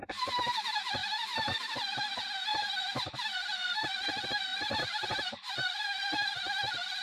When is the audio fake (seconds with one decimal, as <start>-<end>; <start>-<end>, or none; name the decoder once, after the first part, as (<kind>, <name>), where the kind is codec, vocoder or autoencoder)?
1.0-1.7 (vocoder, BigVGAN v2); 2.5-3.1; 4.5-5.5